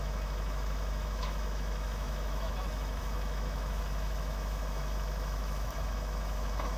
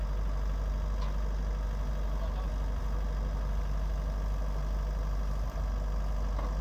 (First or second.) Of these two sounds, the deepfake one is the first